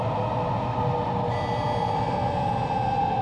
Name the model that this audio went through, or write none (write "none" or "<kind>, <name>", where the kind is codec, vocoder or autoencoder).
none